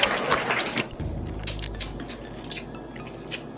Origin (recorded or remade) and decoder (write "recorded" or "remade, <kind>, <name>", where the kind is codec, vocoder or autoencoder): recorded